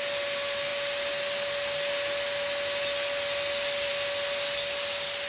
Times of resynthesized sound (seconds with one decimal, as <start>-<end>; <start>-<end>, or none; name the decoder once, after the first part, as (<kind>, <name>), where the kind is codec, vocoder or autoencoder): none